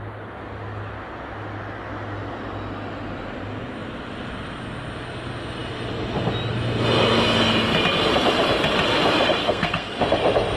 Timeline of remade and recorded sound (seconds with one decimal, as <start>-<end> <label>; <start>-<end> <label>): 0.0-9.4 recorded; 9.4-10.0 remade; 10.0-10.6 recorded